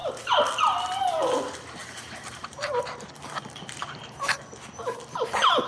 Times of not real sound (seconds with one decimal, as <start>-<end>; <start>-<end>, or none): 1.8-2.8